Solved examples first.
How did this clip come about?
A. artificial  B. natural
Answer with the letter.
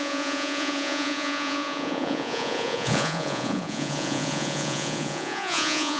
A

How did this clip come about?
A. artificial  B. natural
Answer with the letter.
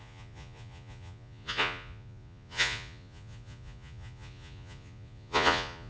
A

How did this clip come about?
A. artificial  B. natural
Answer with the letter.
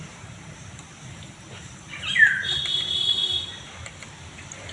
B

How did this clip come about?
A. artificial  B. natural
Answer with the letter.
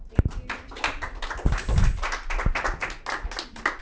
B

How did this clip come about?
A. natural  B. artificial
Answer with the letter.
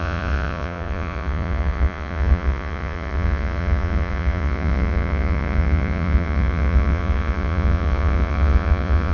B